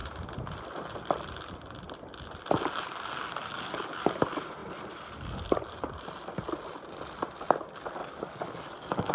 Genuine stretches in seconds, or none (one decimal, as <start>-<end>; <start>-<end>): 0.0-3.4; 4.1-8.0